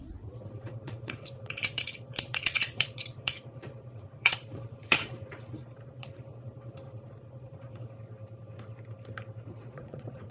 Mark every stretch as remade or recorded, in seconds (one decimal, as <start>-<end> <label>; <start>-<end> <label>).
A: 0.0-8.0 remade; 8.0-9.6 recorded; 9.6-10.3 remade